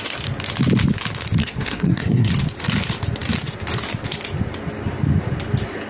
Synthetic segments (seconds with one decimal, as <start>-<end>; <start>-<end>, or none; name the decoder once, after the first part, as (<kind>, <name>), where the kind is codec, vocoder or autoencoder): 1.4-2.3 (codec, SNAC)

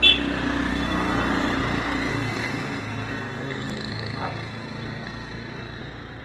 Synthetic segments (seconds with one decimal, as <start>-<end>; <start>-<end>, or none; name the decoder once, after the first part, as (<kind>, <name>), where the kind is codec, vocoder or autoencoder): 0.7-1.3 (codec, SNAC); 2.1-5.8

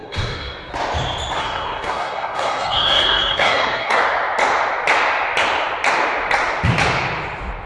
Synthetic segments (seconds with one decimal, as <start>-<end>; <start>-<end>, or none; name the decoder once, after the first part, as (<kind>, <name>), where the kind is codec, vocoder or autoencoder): 0.0-0.7 (codec, SNAC); 1.4-4.0

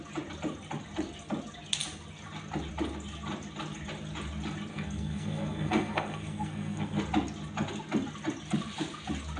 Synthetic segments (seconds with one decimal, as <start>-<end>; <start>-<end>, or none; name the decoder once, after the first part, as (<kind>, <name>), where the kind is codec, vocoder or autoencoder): 4.7-7.0 (codec, SNAC)

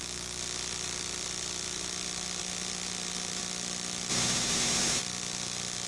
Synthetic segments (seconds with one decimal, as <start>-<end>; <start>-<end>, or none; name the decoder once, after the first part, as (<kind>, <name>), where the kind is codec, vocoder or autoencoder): 4.1-5.0 (autoencoder, DAC-VAE)

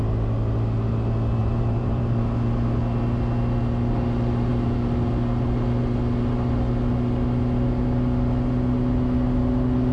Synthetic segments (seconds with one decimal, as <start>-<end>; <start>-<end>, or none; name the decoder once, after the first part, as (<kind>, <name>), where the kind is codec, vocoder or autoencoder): 1.4-2.2 (vocoder, BigVGAN v2)

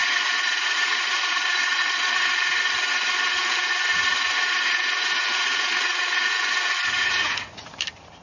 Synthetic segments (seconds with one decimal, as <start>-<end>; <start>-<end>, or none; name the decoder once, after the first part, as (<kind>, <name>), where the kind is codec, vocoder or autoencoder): 0.0-2.3 (vocoder, Vocos); 3.4-7.7